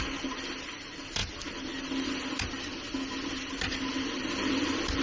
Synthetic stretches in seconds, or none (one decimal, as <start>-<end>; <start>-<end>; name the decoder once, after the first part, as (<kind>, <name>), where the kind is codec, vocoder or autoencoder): none